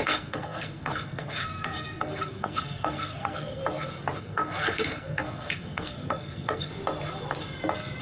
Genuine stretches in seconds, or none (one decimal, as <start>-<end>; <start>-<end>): 3.6-4.2; 6.7-8.0